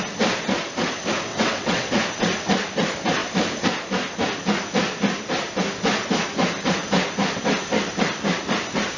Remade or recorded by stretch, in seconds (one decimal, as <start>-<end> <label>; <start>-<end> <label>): 0.0-1.3 recorded; 1.3-1.9 remade; 1.9-9.0 recorded